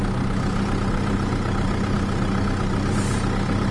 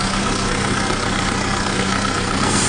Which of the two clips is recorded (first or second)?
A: first